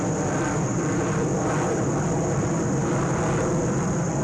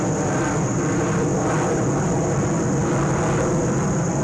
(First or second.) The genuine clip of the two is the second